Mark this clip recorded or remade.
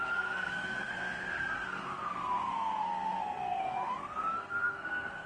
remade